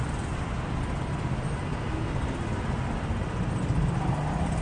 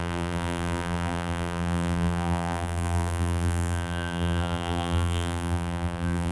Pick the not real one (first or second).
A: second